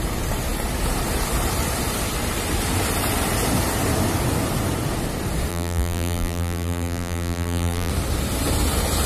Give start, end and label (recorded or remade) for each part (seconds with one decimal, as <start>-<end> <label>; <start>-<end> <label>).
0.0-5.5 recorded; 5.5-7.9 remade; 7.9-9.1 recorded